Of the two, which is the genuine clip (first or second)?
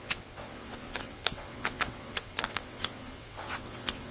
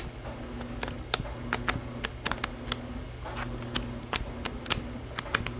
second